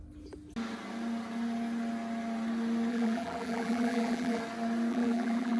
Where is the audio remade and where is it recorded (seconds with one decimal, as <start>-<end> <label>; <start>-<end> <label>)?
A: 0.0-2.9 recorded; 2.9-4.4 remade; 4.4-4.9 recorded; 4.9-5.6 remade